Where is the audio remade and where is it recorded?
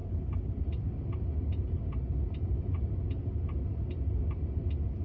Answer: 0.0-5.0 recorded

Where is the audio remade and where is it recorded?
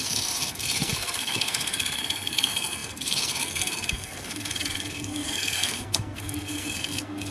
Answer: 0.0-7.3 remade